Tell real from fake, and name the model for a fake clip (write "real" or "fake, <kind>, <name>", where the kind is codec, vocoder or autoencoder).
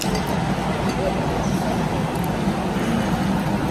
real